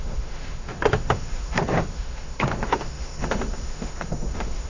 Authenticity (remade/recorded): remade